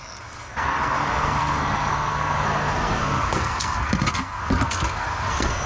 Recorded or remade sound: remade